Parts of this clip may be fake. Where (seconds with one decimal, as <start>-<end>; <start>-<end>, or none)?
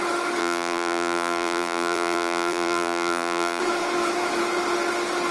0.4-3.6